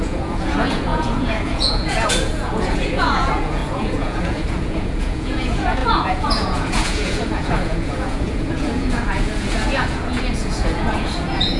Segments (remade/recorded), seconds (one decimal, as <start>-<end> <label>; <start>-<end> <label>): 0.0-11.6 remade